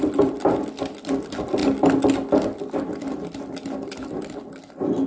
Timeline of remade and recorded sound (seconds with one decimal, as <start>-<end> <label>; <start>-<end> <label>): 0.0-5.1 recorded